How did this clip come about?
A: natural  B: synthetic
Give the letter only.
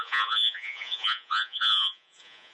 B